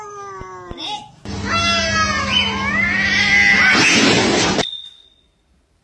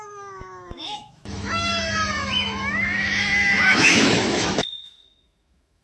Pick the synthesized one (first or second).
second